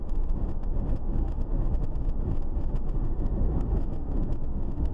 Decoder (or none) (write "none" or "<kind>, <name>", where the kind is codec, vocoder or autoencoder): autoencoder, DAC-VAE